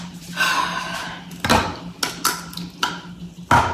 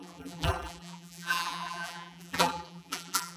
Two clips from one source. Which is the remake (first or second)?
second